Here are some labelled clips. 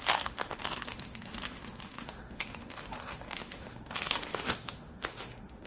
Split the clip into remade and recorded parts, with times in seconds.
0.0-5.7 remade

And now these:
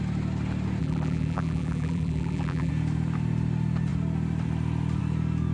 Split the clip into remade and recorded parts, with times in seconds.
0.0-0.8 recorded; 0.8-2.7 remade; 2.7-5.5 recorded

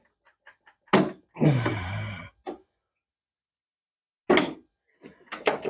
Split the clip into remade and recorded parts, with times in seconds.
0.0-5.7 recorded

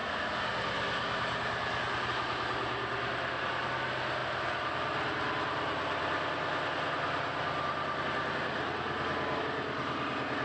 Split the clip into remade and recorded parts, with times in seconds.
0.0-10.4 recorded